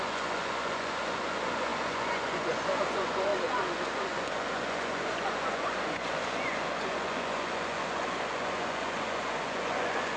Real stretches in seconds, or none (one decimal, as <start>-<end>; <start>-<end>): none